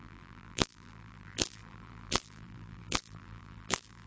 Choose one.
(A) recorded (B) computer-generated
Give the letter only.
B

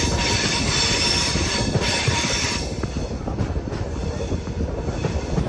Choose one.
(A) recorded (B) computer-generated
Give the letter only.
B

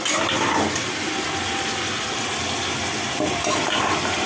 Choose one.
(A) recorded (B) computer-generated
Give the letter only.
A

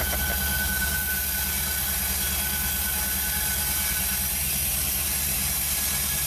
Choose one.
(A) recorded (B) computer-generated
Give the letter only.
A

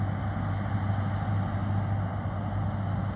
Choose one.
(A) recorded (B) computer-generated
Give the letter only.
A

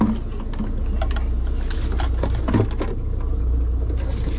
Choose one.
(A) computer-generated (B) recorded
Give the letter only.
B